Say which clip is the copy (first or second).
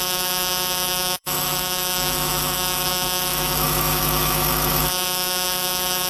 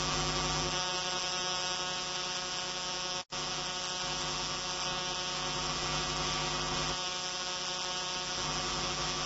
first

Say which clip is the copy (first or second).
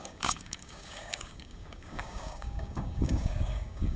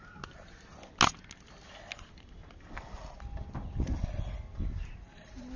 first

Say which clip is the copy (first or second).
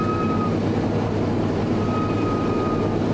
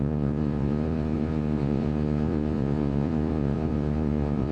second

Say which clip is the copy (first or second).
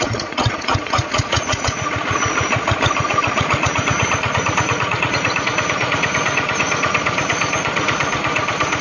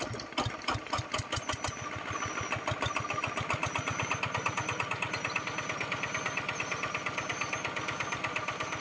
first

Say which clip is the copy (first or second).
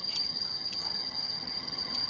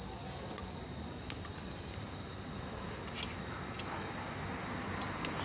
first